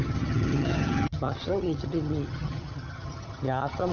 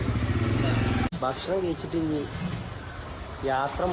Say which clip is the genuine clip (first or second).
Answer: second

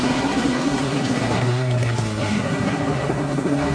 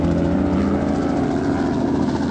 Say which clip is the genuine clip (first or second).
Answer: second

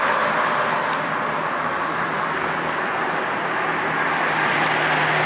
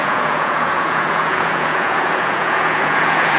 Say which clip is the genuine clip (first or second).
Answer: first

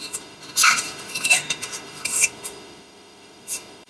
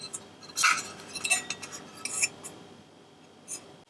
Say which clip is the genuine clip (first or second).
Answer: second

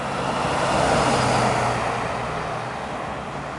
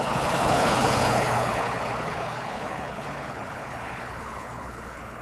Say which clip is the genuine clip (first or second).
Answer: first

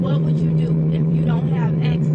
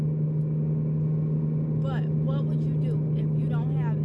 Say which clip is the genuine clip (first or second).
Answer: second